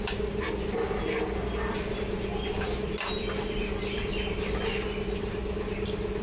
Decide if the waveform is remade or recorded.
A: recorded